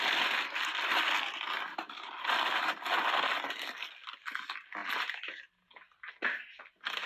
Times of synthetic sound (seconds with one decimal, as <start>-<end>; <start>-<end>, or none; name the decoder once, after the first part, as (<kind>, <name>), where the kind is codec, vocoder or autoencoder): none